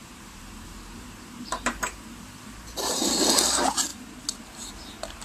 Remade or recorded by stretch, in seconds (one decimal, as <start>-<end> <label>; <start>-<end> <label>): 0.0-3.1 remade; 3.1-5.2 recorded

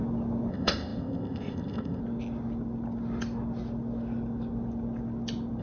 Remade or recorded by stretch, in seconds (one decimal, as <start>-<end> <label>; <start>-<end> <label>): 0.0-0.5 recorded; 0.5-2.0 remade; 2.0-5.6 recorded

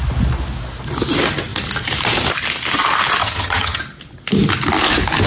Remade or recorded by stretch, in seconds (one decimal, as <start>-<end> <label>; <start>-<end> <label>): 0.0-3.2 recorded; 3.2-3.8 remade; 3.8-5.3 recorded

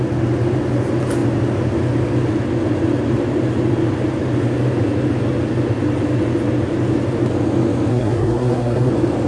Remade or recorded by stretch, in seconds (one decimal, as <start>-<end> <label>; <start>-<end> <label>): 0.0-7.9 recorded; 7.9-8.9 remade; 8.9-9.3 recorded

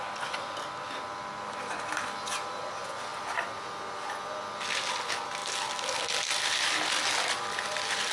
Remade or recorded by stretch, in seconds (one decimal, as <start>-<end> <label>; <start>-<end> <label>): 0.0-8.1 recorded

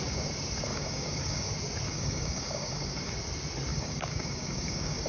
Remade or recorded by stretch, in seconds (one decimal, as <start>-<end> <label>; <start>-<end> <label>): 0.0-0.7 recorded; 0.7-1.5 remade; 1.5-1.9 recorded; 1.9-3.1 remade; 3.1-3.7 recorded; 3.7-5.1 remade

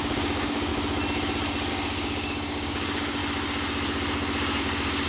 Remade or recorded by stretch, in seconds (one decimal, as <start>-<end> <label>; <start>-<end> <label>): 0.0-0.7 remade; 0.7-1.7 recorded; 1.7-3.2 remade; 3.2-4.6 recorded; 4.6-5.1 remade